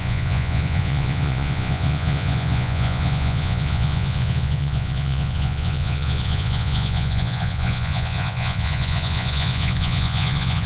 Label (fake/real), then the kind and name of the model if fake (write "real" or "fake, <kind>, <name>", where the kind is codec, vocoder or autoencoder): fake, vocoder, Vocos